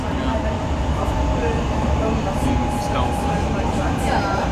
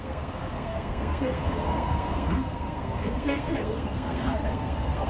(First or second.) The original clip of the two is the first